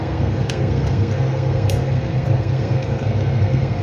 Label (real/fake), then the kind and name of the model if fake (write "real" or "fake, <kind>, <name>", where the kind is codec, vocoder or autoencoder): fake, codec, SNAC